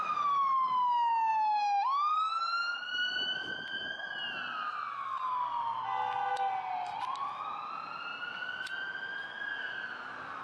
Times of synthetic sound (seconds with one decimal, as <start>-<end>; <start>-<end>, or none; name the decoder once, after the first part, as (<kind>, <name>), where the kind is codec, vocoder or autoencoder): none